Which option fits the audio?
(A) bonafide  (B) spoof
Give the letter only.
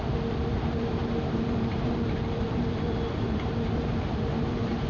B